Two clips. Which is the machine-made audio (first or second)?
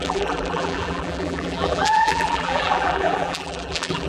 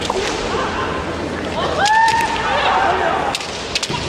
first